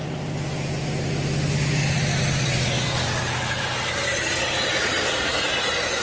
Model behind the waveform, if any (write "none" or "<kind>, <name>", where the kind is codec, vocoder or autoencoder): none